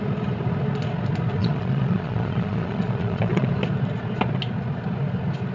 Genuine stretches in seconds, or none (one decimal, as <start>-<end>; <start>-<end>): 0.0-1.4; 3.5-5.5